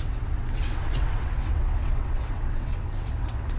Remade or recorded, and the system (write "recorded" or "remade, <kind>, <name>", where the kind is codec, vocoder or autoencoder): remade, vocoder, WaveNeXt